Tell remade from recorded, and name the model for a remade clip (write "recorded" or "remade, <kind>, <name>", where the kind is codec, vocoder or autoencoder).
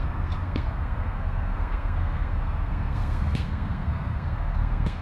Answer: remade, codec, SNAC